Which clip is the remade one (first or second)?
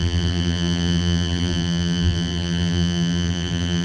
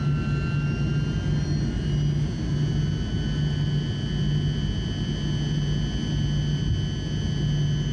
first